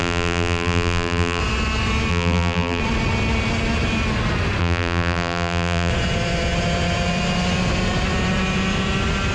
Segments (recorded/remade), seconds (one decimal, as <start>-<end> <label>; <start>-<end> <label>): 0.0-1.4 remade; 1.4-2.1 recorded; 2.1-2.8 remade; 2.8-4.6 recorded; 4.6-5.9 remade; 5.9-9.3 recorded